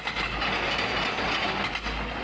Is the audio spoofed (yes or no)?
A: no